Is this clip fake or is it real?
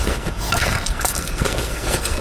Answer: fake